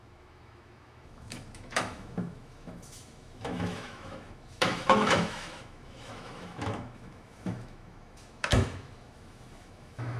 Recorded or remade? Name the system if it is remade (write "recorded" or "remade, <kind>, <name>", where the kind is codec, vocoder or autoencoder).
remade, autoencoder, DAC-VAE